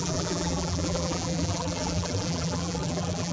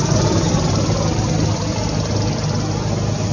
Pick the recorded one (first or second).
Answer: second